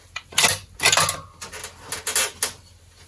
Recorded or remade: recorded